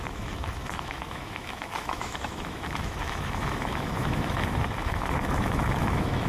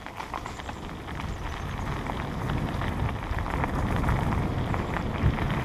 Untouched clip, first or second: second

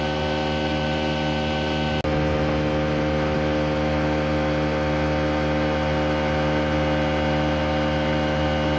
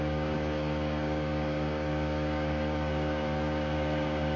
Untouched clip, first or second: first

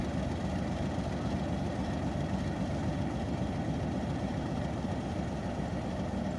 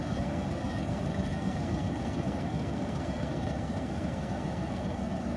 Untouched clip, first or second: first